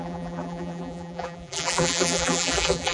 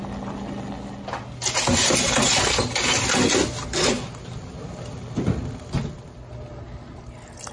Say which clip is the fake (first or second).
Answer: first